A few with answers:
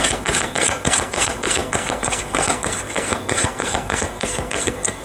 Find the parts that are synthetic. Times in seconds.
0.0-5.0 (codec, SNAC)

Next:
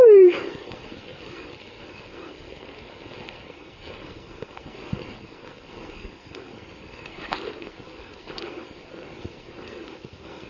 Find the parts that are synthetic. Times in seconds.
0.0-10.5 (codec, SNAC)

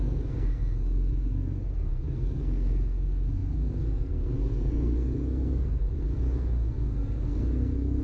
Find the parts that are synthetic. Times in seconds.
0.0-8.0 (codec, SNAC)

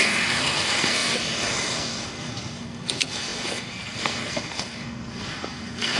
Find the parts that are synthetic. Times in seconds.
0.0-6.0 (codec, SNAC)

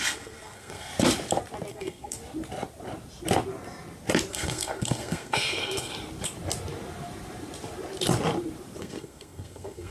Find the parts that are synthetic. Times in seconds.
0.0-0.9 (codec, SNAC); 1.7-2.2; 4.3-5.9; 8.8-9.9

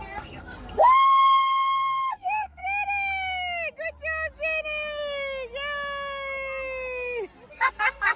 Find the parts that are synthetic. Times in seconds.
0.0-2.6 (codec, SNAC); 7.5-8.2

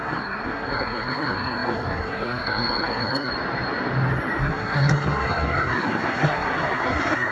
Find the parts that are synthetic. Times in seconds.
0.0-3.3 (codec, SNAC); 4.4-7.3